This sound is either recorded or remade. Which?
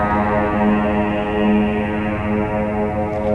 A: recorded